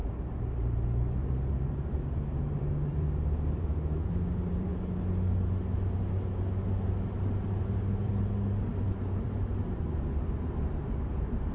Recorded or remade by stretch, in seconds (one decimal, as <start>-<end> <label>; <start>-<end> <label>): 0.0-4.7 remade; 4.7-7.6 recorded; 7.6-8.1 remade; 8.1-10.2 recorded; 10.2-11.5 remade